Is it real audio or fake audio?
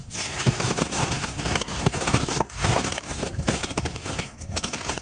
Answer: fake